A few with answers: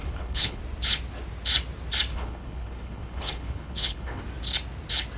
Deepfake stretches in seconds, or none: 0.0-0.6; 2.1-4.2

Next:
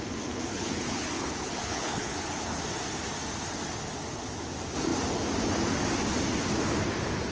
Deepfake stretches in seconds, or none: 0.5-2.6

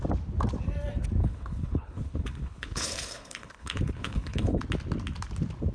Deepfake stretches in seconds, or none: 1.2-4.6

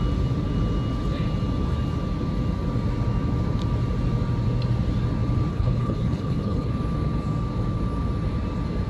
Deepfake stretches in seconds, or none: 5.5-6.7

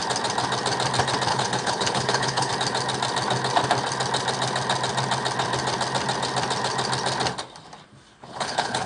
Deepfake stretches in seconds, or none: 1.3-2.5; 8.1-8.9

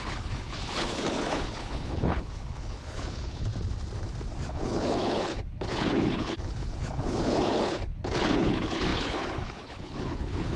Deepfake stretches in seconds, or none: 0.0-3.5; 4.5-10.6

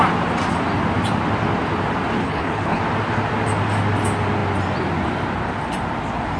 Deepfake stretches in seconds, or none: 2.2-2.8

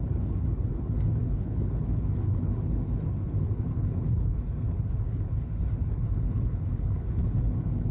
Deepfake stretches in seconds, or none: 0.0-7.9